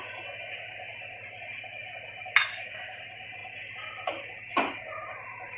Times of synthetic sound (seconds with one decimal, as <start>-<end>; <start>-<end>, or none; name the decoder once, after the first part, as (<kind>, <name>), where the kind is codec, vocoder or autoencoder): 2.4-3.0 (codec, DAC)